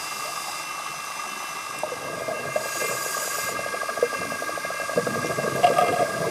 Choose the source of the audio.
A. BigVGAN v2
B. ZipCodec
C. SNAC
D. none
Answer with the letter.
D